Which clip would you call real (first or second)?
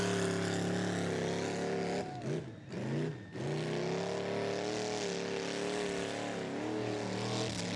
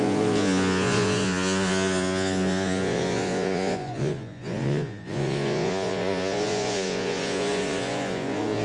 first